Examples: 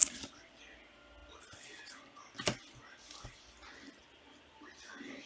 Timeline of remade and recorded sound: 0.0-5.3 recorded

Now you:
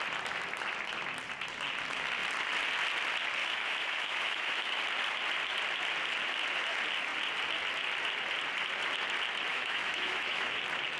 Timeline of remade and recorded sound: 0.0-3.4 recorded; 3.4-4.8 remade; 4.8-9.5 recorded; 9.5-10.6 remade; 10.6-11.0 recorded

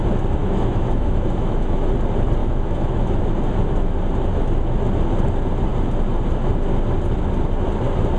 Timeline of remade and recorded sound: 0.0-0.4 recorded; 0.4-1.9 remade; 1.9-2.4 recorded; 2.4-3.2 remade; 3.2-8.2 recorded